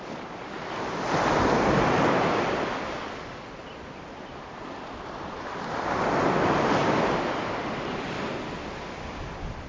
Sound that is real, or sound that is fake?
real